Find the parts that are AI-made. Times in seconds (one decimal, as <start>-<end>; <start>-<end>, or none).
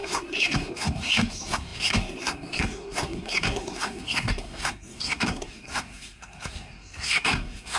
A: 0.0-7.8